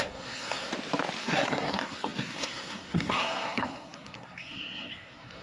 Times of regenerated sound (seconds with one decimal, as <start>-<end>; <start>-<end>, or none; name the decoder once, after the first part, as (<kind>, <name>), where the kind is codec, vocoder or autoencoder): 0.0-0.7 (codec, SNAC); 1.2-5.4